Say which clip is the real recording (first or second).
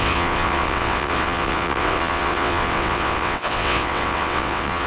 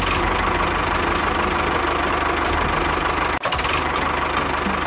second